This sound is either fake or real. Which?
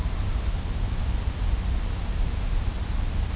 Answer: real